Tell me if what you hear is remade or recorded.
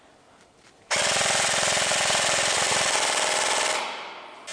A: remade